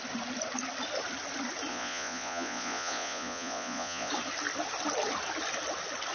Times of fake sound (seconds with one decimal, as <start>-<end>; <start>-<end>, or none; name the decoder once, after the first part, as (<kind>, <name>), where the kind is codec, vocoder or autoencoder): 1.7-4.1 (vocoder, Vocos)